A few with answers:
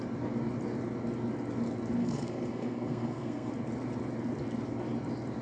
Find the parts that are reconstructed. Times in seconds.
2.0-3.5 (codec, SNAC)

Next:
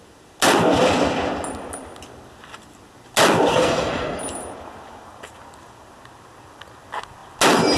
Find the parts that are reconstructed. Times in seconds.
3.5-4.2 (codec, SNAC)

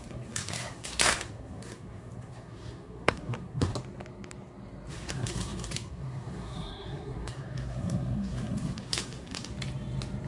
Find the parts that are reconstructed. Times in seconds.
0.0-3.7 (codec, SNAC); 4.9-9.5

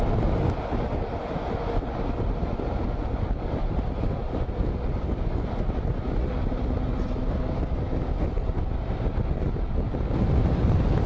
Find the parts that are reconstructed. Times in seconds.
none

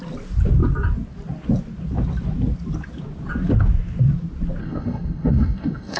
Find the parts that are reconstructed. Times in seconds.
4.6-6.0 (codec, SNAC)

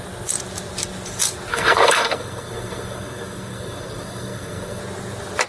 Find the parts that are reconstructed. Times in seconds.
1.5-4.8 (codec, SNAC)

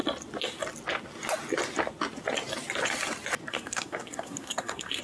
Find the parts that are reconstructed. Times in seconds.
3.5-5.0 (codec, SNAC)